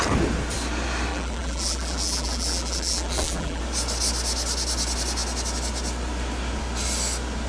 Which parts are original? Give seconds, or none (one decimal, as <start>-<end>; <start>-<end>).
0.0-1.1; 3.6-7.5